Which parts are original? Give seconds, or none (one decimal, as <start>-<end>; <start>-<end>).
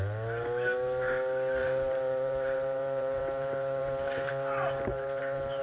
0.0-1.6; 4.3-4.9